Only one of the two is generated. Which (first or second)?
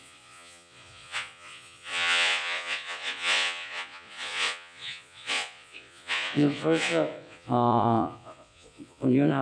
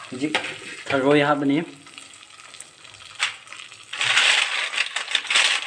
first